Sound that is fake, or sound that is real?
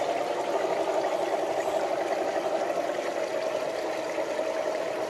real